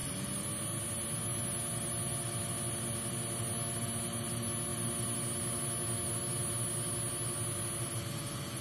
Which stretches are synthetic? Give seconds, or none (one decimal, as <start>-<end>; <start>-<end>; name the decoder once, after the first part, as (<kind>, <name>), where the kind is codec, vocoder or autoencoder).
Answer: none